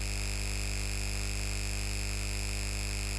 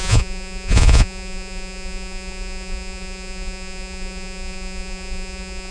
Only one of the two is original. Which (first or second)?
first